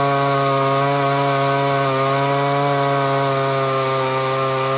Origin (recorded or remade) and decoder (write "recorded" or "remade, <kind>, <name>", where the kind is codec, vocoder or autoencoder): recorded